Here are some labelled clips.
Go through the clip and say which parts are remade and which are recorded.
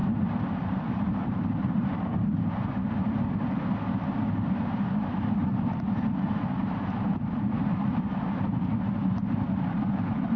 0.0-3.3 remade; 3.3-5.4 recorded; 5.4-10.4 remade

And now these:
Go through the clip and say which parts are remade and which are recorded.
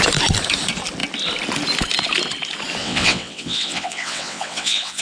0.0-2.8 recorded; 2.8-5.0 remade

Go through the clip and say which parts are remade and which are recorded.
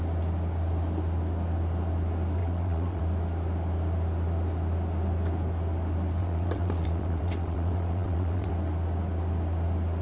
0.0-2.4 recorded; 2.4-3.0 remade; 3.0-6.2 recorded; 6.2-8.5 remade; 8.5-10.0 recorded